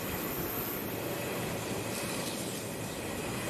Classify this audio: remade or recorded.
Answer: remade